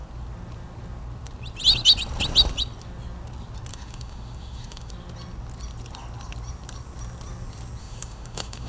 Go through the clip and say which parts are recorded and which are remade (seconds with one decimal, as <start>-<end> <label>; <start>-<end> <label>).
0.0-3.7 recorded; 3.7-4.9 remade; 4.9-7.8 recorded; 7.8-8.7 remade